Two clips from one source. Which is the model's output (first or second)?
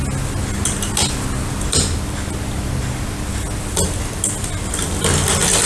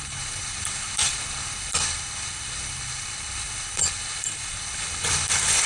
second